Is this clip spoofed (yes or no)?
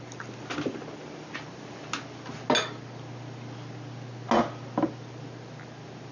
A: no